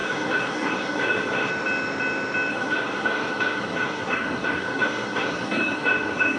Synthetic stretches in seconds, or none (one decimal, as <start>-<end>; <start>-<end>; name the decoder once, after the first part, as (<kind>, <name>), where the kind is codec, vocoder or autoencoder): 0.0-1.5 (codec, SNAC); 2.5-6.4